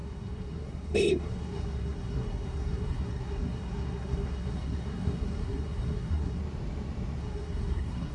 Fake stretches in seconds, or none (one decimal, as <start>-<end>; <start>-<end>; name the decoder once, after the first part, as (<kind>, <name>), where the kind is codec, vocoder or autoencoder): 0.0-6.4 (codec, SNAC); 7.2-8.1